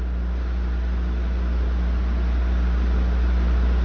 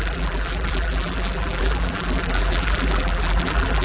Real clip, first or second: first